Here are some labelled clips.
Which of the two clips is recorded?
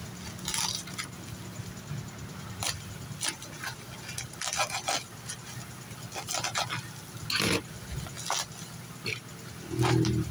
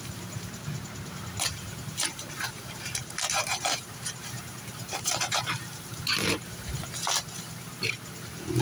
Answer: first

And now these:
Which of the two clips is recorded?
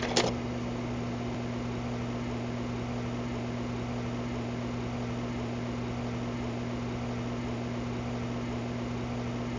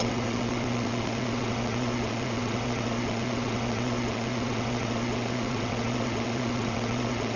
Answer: first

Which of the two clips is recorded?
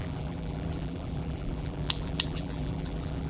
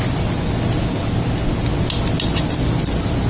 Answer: second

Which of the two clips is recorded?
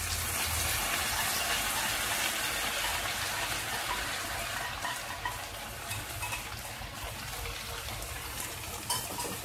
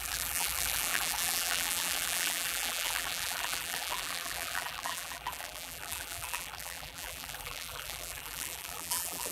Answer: first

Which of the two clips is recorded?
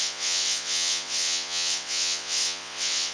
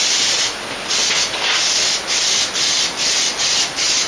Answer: second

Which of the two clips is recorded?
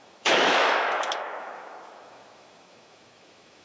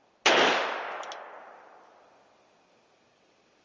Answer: second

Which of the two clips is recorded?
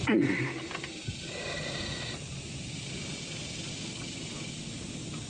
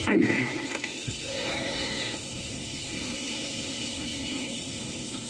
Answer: first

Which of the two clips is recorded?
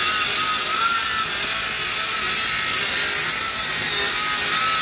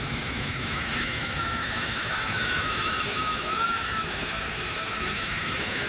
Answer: first